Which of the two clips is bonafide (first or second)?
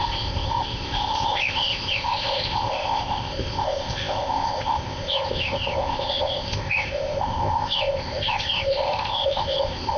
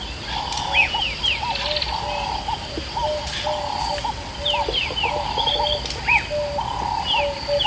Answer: second